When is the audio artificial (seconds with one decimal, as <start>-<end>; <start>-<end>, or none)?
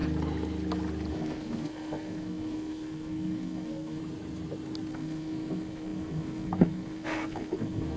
1.1-4.0; 4.9-8.0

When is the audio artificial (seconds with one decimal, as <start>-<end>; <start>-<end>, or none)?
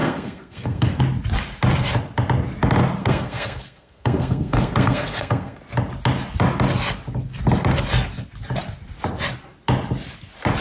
0.0-1.0; 3.0-5.6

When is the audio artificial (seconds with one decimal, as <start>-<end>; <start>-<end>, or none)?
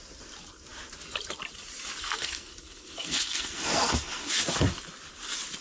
2.0-4.3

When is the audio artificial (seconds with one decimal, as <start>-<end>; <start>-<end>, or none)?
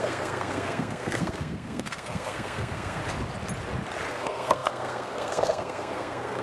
0.0-3.0; 4.1-6.4